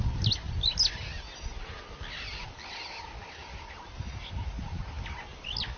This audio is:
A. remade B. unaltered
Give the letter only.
B